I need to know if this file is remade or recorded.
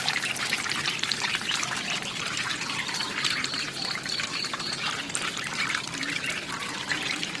remade